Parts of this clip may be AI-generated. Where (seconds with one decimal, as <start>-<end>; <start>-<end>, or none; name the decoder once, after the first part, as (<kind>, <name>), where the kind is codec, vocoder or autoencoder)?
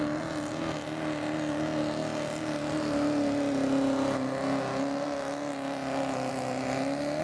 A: none